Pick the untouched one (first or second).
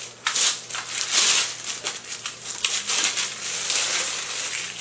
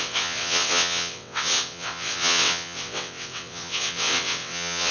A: first